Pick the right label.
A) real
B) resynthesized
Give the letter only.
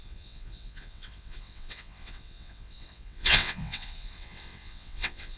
B